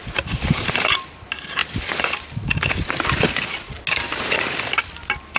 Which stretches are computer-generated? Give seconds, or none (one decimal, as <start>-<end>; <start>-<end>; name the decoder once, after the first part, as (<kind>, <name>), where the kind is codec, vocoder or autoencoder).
none